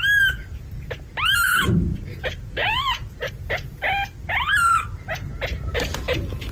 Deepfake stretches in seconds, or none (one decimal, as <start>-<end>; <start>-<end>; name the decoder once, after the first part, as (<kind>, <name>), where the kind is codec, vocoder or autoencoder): 1.9-3.3 (vocoder, Vocos)